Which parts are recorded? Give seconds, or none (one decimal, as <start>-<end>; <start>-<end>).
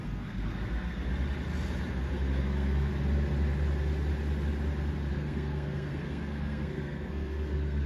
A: 1.1-1.9; 2.9-5.1